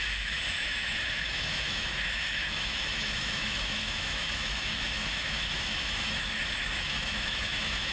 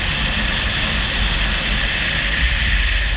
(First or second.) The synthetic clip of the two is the first